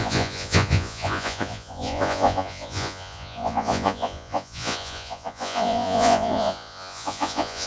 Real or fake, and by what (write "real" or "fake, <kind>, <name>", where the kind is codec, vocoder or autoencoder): fake, vocoder, Vocos